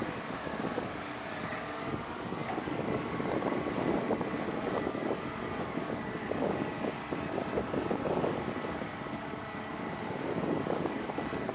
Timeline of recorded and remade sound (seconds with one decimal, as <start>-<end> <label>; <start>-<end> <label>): 0.0-11.5 remade